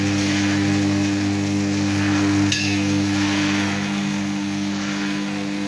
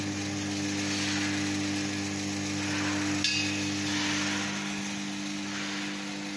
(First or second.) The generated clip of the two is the first